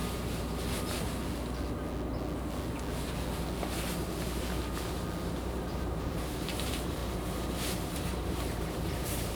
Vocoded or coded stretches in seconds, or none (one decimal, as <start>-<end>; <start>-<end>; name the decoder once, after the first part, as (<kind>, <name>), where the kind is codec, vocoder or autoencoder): 5.3-9.3 (vocoder, BigVGAN v2)